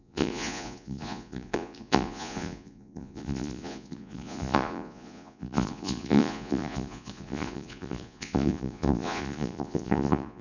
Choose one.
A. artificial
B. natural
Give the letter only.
A